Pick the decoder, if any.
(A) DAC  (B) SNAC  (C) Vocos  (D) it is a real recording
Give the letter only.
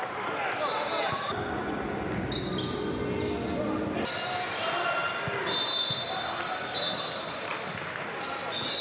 D